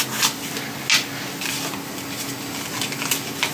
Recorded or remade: recorded